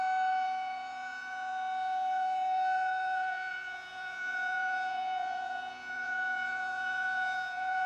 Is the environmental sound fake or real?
fake